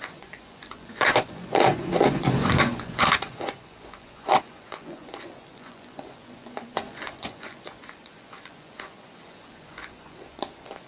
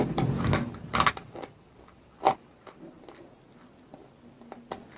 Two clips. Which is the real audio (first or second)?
second